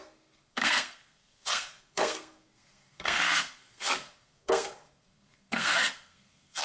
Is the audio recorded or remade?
remade